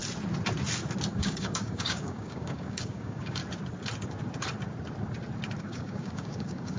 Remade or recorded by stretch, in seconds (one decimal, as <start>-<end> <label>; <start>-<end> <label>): 0.0-1.1 recorded; 1.1-3.4 remade; 3.4-5.6 recorded; 5.6-6.8 remade